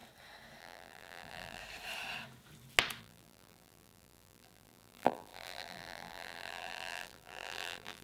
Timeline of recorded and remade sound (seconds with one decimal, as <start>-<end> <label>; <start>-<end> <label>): 0.0-0.6 recorded; 0.6-1.6 remade; 1.6-3.0 recorded; 3.0-8.0 remade